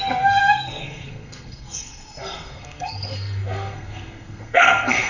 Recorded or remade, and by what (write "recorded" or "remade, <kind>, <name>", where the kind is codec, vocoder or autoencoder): remade, codec, SNAC